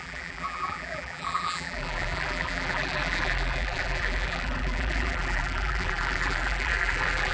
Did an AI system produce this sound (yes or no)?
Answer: yes